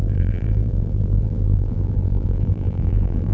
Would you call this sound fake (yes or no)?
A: yes